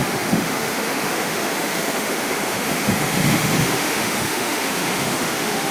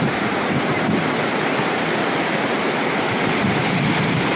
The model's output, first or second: first